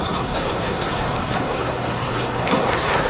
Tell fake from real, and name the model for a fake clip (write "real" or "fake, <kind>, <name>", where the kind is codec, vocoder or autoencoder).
fake, codec, SNAC